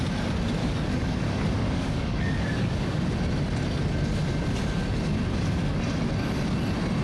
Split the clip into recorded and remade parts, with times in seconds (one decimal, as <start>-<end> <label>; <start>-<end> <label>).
0.0-0.6 recorded; 0.6-3.0 remade; 3.0-7.0 recorded